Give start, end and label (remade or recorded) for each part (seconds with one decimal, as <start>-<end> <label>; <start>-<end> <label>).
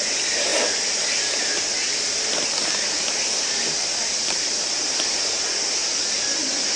0.0-6.8 recorded